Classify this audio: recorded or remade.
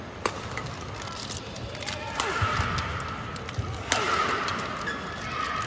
recorded